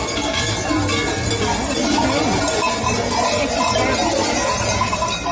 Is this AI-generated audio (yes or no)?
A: no